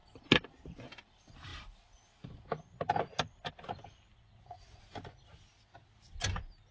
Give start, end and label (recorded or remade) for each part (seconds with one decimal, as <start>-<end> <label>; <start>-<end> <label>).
0.0-4.1 recorded; 4.1-4.8 remade; 4.8-6.7 recorded